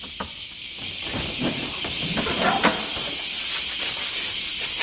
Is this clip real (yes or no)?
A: yes